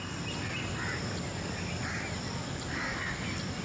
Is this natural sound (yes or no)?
yes